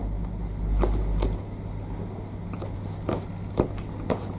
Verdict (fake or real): real